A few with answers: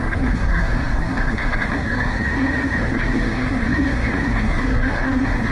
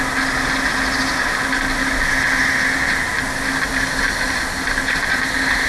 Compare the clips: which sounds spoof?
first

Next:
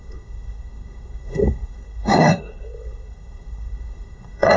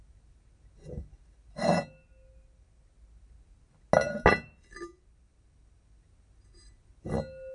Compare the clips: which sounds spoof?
first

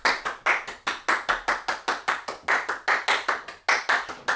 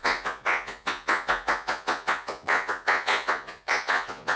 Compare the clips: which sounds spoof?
second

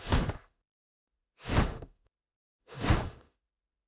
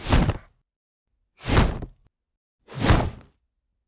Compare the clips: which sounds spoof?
first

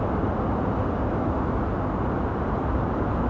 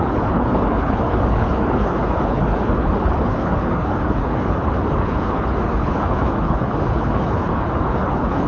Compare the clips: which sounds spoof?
second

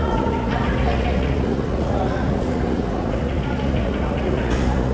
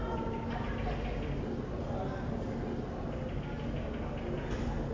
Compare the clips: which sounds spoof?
first